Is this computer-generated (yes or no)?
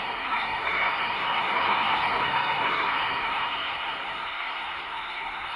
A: yes